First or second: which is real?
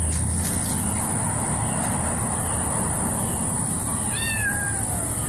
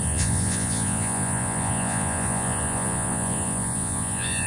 first